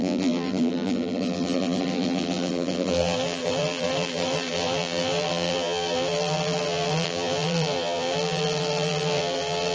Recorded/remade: remade